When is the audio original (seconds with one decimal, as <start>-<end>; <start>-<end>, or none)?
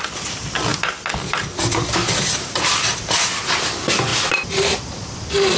0.7-3.6; 4.1-4.8